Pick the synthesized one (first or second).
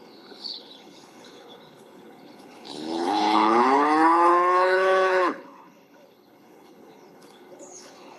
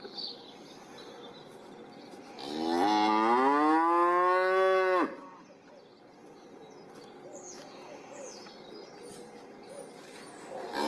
first